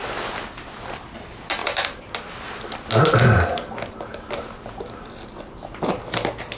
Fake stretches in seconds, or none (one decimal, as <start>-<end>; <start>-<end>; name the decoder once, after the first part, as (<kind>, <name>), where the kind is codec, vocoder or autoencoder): none